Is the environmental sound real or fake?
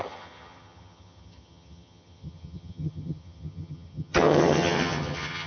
fake